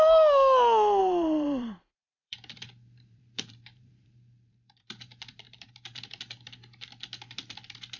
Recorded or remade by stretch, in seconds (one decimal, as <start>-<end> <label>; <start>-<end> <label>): 0.0-1.0 recorded; 1.0-5.7 remade; 5.7-8.0 recorded